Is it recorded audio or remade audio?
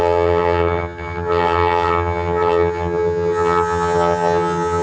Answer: remade